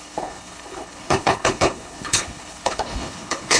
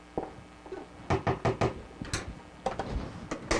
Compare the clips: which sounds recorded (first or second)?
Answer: second